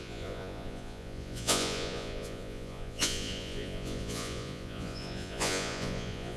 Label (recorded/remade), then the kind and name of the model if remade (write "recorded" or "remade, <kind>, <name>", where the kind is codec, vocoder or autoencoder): remade, vocoder, Vocos